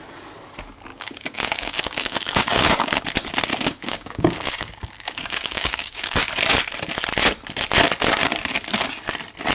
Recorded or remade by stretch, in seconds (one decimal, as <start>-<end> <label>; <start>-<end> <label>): 0.0-0.9 recorded; 0.9-3.0 remade; 3.0-3.5 recorded; 3.5-6.3 remade; 6.3-9.5 recorded